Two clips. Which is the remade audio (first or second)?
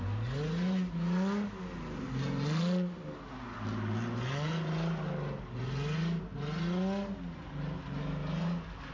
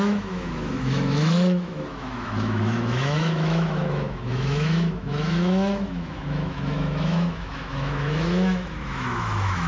second